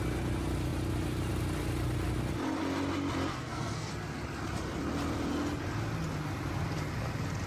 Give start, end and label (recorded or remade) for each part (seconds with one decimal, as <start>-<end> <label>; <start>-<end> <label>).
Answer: 0.0-3.3 recorded; 3.3-3.9 remade; 3.9-7.5 recorded